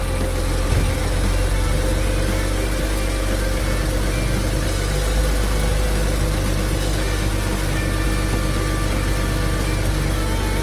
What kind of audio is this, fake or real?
real